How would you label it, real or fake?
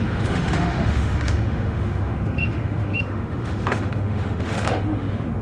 fake